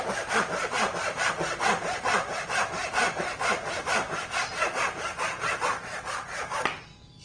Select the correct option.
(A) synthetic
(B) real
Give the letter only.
B